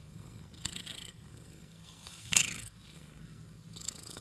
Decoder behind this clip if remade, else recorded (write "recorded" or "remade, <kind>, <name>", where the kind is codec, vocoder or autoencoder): remade, codec, SNAC